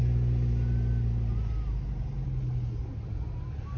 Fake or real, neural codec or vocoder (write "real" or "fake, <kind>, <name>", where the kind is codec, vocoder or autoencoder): real